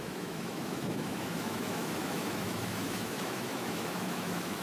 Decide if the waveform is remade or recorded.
remade